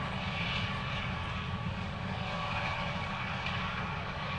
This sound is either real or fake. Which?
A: fake